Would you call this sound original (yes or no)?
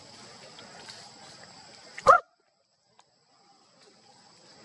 yes